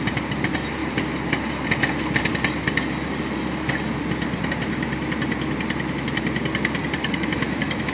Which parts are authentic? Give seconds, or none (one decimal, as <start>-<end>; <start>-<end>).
0.0-7.0